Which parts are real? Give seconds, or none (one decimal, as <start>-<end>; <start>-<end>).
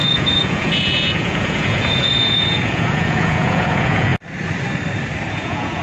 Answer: 4.1-5.3